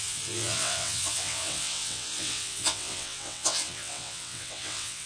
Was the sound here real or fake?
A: fake